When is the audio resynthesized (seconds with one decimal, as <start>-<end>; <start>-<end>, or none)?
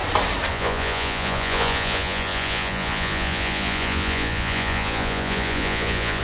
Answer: 0.5-6.2